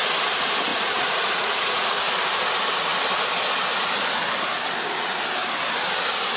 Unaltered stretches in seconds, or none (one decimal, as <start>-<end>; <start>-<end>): 0.0-0.7; 2.0-6.4